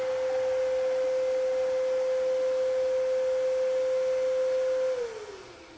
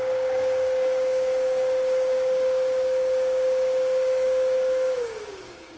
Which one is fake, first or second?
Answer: second